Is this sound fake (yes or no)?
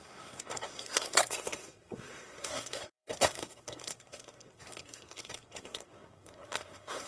yes